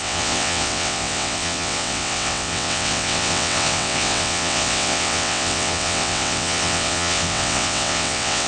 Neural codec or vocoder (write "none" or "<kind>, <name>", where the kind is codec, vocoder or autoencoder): vocoder, WaveNeXt